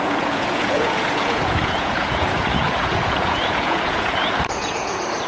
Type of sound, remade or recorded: remade